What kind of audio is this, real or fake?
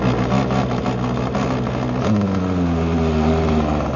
real